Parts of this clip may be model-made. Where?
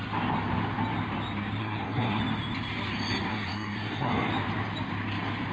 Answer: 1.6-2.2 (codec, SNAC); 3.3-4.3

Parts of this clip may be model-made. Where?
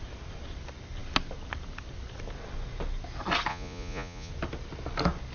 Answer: 3.5-4.3 (vocoder, Vocos)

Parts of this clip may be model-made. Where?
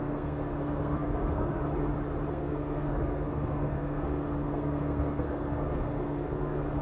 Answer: 0.0-1.6 (codec, SNAC); 2.3-6.8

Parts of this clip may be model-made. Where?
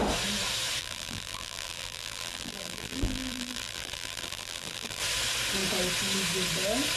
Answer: 0.8-5.0 (vocoder, BigVGAN v2)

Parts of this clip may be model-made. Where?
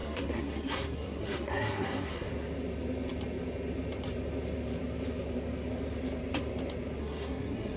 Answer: 0.0-2.3 (codec, SNAC); 7.0-7.8